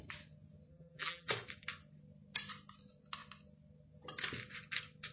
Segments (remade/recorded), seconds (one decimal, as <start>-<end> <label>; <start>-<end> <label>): 0.0-0.7 recorded; 0.7-1.3 remade; 1.3-5.1 recorded